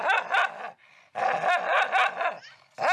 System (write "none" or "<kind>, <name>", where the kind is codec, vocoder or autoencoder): none